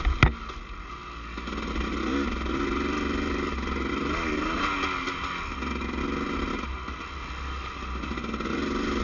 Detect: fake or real real